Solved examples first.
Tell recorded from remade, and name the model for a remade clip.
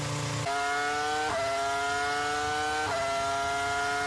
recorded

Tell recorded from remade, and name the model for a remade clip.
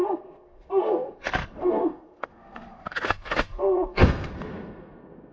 remade, codec, SNAC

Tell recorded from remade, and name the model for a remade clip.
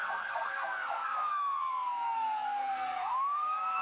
remade, codec, SNAC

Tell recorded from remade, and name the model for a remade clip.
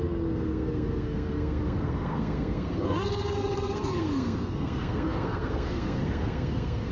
remade, codec, SNAC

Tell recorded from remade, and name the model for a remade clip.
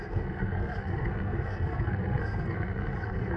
remade, codec, SNAC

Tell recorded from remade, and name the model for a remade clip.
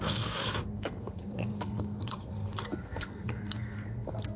remade, codec, SNAC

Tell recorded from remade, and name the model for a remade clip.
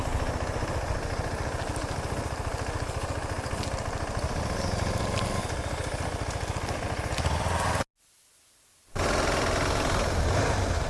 recorded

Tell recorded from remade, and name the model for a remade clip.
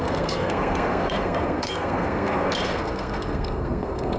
remade, codec, SNAC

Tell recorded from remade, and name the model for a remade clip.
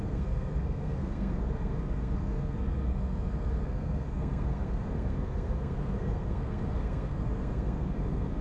remade, codec, SNAC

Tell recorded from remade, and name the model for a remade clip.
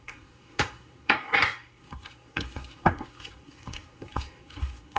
remade, codec, SNAC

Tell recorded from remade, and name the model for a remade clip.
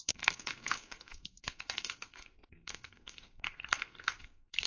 remade, codec, SNAC